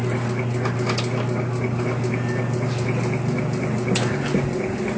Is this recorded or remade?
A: recorded